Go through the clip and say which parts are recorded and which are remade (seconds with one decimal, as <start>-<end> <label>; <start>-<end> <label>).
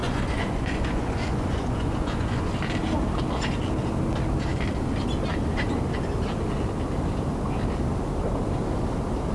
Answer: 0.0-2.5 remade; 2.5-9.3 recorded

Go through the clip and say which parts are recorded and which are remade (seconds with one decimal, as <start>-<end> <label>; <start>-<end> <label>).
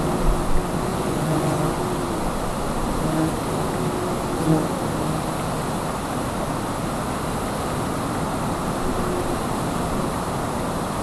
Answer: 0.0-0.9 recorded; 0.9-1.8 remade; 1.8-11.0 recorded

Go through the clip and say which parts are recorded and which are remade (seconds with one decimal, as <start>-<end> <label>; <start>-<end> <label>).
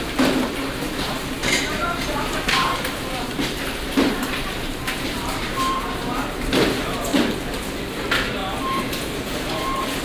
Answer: 0.0-1.4 recorded; 1.4-6.6 remade; 6.6-7.1 recorded; 7.1-7.6 remade; 7.6-8.4 recorded; 8.4-10.0 remade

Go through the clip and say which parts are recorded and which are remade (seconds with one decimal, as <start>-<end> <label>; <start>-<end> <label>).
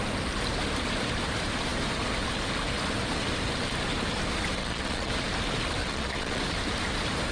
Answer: 0.0-4.6 recorded; 4.6-5.1 remade; 5.1-5.8 recorded; 5.8-6.4 remade; 6.4-7.3 recorded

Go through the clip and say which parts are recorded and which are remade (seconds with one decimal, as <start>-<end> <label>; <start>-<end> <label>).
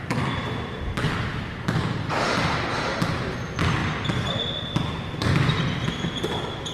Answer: 0.0-3.8 recorded; 3.8-4.8 remade; 4.8-6.7 recorded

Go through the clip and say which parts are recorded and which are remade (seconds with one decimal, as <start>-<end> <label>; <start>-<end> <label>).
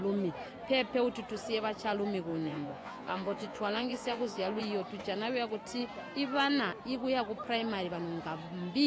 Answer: 0.0-2.3 recorded; 2.3-4.6 remade; 4.6-8.9 recorded